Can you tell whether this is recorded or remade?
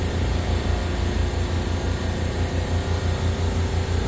recorded